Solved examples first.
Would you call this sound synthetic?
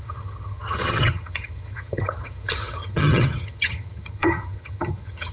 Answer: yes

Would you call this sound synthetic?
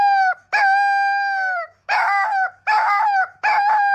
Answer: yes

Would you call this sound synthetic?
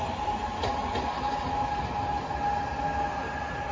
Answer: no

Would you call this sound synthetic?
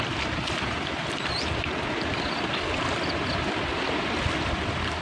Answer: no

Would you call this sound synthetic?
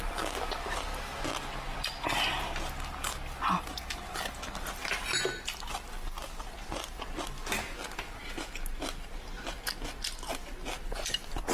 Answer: no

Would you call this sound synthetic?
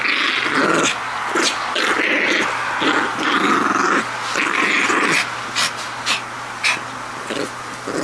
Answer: no